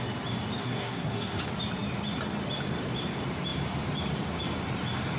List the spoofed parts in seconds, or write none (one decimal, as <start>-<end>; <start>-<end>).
0.6-1.4